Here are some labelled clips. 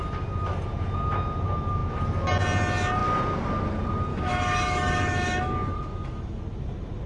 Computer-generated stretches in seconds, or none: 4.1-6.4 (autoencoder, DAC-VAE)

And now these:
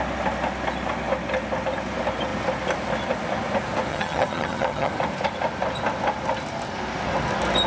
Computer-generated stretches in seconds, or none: 3.9-4.9 (vocoder, HiFi-GAN)

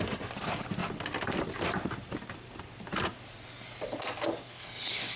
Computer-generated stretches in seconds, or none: 4.4-5.2 (codec, HILCodec)

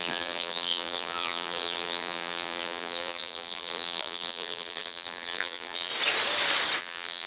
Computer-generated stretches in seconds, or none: 0.0-5.9 (vocoder, BigVGAN v2); 6.8-7.3

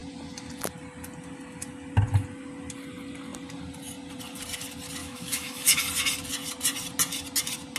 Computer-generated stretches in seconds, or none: 5.0-5.8 (autoencoder, DAC-VAE)